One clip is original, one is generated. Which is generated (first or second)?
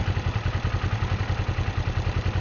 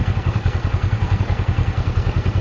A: second